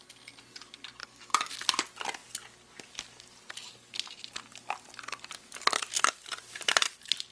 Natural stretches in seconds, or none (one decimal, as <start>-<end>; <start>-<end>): 0.0-1.0; 1.5-7.3